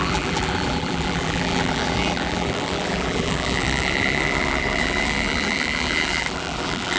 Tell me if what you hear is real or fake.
fake